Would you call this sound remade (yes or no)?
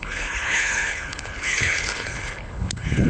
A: yes